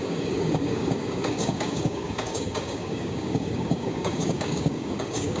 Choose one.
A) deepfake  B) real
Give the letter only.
A